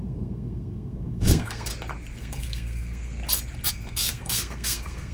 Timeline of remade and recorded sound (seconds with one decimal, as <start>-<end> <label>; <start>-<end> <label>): 0.0-1.7 remade; 1.7-2.2 recorded; 2.2-3.2 remade; 3.2-3.7 recorded; 3.7-5.1 remade